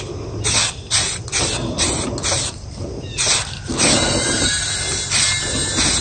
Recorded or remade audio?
recorded